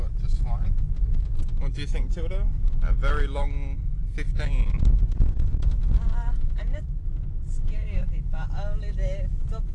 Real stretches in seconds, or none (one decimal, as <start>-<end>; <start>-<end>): 0.0-9.7